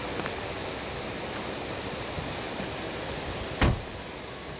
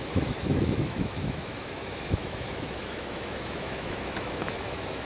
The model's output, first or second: second